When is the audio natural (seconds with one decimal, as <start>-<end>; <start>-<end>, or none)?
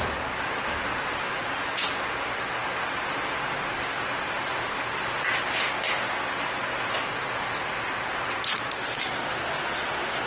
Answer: 0.0-10.3